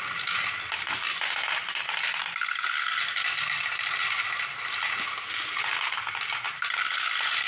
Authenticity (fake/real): real